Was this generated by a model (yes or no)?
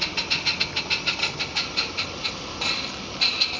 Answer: no